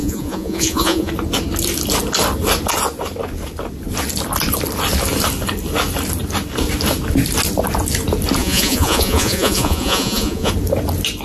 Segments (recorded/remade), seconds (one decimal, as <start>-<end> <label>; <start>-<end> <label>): 0.0-1.1 remade; 1.1-8.4 recorded; 8.4-10.5 remade; 10.5-11.2 recorded